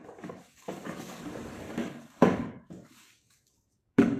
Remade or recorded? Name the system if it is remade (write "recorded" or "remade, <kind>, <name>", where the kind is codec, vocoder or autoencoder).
remade, codec, DAC